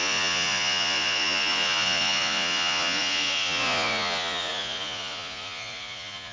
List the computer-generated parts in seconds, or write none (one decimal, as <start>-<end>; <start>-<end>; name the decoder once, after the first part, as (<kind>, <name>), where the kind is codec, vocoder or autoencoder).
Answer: 0.0-6.3 (vocoder, Vocos)